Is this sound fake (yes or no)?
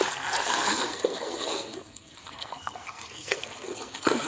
yes